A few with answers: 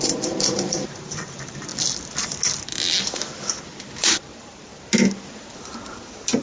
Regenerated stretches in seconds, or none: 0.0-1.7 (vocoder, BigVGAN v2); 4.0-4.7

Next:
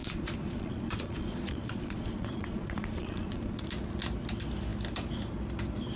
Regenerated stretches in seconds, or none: 0.0-3.6 (vocoder, Vocos)

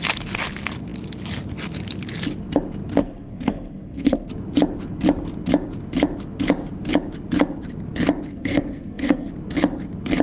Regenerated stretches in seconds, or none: 3.0-4.3 (codec, SNAC); 8.3-9.3

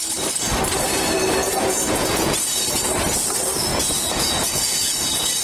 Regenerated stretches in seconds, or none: 1.4-2.6 (vocoder, Vocos); 3.7-4.8

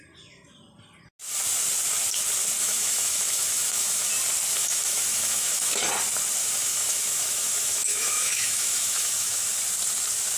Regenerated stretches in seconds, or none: 2.6-4.1 (autoencoder, DAC-VAE); 4.5-5.8; 6.4-9.4

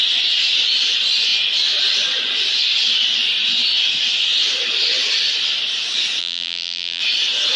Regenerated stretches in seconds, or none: 6.2-7.0 (vocoder, BigVGAN v2)

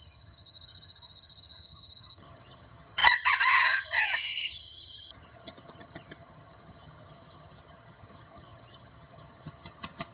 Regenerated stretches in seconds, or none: 0.0-10.1 (vocoder, HiFi-GAN)

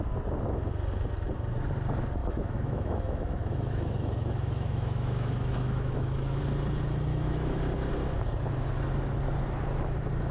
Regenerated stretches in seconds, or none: 2.2-6.4 (autoencoder, DAC-VAE); 7.1-7.6